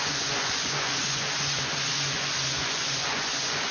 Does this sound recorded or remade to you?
remade